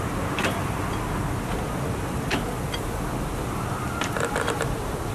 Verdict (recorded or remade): recorded